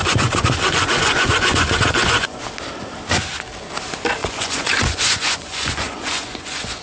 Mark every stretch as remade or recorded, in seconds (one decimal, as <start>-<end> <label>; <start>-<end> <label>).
0.0-2.4 remade; 2.4-4.2 recorded; 4.2-6.8 remade